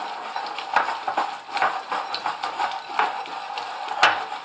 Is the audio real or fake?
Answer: real